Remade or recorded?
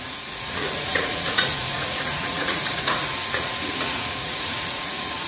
remade